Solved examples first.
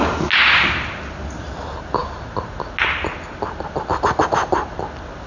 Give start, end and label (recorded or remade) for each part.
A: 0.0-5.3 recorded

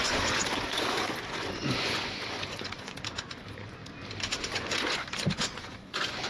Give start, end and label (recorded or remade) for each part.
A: 0.0-3.8 remade; 3.8-4.3 recorded; 4.3-6.3 remade

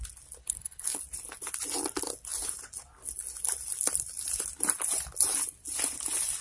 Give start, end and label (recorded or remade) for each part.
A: 0.0-0.4 recorded; 0.4-1.0 remade; 1.0-6.4 recorded

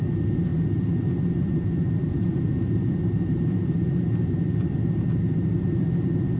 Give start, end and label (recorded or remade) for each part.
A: 0.0-0.5 recorded; 0.5-4.3 remade; 4.3-6.4 recorded

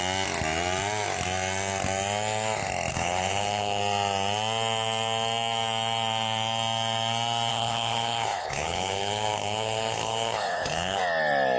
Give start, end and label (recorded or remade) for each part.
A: 0.0-2.9 recorded; 2.9-3.8 remade; 3.8-7.5 recorded; 7.5-11.0 remade; 11.0-11.6 recorded